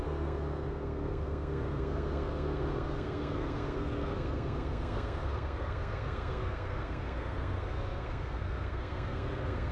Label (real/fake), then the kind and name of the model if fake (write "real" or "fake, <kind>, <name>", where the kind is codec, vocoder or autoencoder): fake, codec, SNAC